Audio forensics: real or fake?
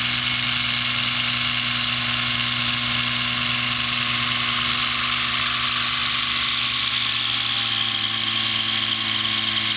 real